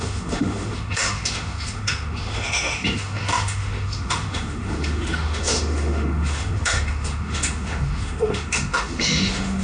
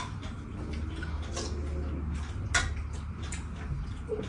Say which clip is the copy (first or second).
first